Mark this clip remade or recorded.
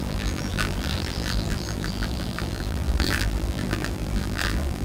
remade